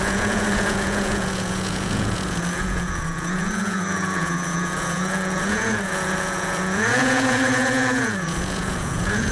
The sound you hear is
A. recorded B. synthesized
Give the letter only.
B